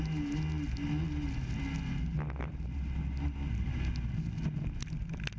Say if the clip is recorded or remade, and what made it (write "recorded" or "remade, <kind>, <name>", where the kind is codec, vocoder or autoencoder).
recorded